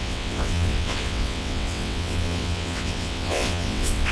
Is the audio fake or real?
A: fake